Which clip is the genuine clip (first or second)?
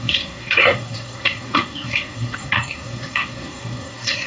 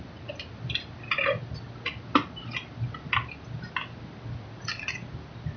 second